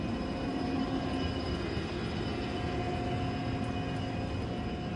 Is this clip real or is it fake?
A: real